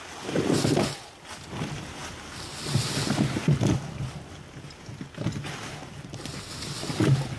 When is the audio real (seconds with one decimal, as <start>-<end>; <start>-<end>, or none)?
0.0-7.4